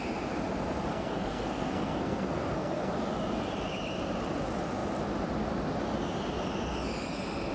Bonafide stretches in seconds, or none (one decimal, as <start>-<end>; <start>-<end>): 0.0-0.9; 2.9-7.5